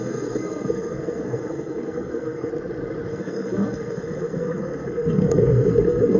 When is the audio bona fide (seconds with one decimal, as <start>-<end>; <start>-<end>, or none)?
2.5-3.1